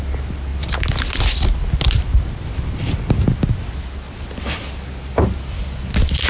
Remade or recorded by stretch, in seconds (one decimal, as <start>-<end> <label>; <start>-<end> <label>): 0.0-6.3 recorded